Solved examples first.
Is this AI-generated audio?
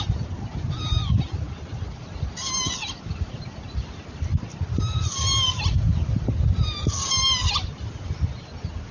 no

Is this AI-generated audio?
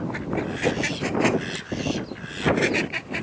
no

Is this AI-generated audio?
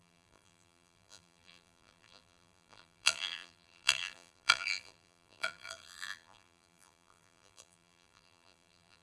yes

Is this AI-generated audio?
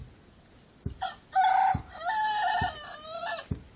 no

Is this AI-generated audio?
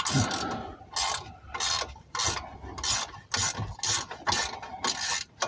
no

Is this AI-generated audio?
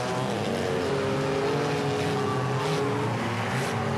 no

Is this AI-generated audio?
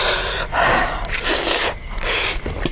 no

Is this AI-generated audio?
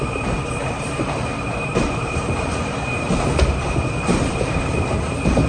yes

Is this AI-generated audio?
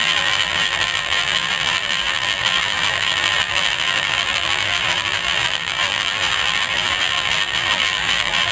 yes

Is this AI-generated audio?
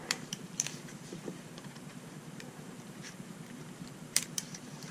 yes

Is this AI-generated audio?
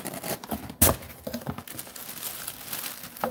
no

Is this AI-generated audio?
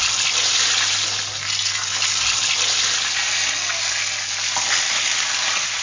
no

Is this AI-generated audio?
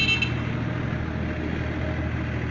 no